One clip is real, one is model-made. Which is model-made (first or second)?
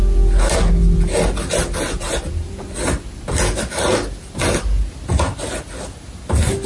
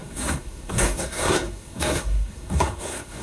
second